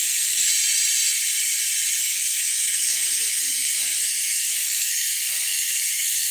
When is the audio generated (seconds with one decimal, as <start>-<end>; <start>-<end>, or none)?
0.0-0.5; 2.0-6.3

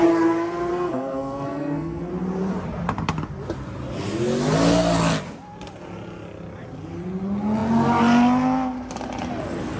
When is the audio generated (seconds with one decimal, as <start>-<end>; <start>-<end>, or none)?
0.7-2.1

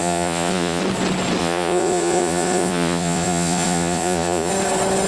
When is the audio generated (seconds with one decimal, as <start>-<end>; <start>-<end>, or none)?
0.0-0.8; 1.4-4.5

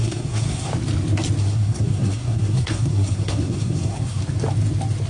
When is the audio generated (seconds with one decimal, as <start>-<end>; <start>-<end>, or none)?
0.0-0.7; 1.4-4.2

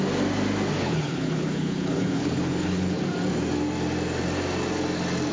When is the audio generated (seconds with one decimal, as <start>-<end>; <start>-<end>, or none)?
0.8-3.0